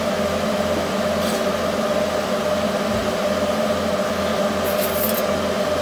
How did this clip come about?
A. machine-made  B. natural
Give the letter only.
B